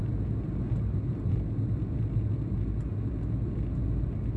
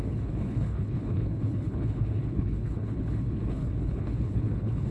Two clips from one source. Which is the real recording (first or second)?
first